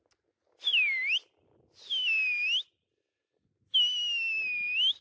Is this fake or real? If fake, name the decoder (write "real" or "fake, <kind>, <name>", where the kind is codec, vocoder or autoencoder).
real